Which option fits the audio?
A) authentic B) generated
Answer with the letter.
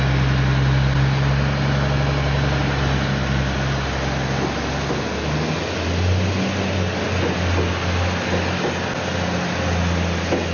A